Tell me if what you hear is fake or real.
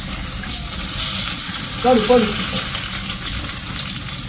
real